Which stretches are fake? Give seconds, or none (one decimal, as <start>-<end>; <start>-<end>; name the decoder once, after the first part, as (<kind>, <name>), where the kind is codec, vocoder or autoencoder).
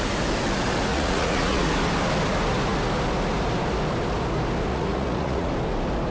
0.9-1.7 (vocoder, Vocos); 4.7-5.5